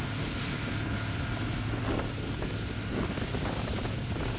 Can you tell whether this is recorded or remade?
remade